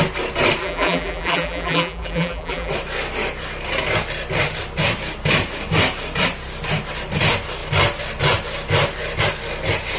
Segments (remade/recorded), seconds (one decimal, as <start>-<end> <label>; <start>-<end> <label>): 0.0-0.6 recorded; 0.6-2.7 remade; 2.7-10.0 recorded